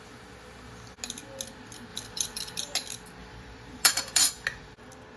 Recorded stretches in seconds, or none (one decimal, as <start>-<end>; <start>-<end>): 0.0-1.9; 2.6-3.2; 4.3-5.2